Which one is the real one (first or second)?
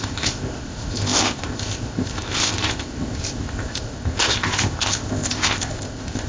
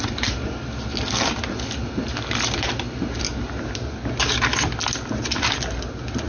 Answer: second